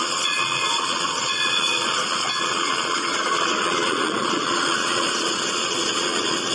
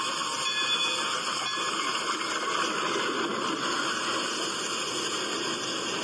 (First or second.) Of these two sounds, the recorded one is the second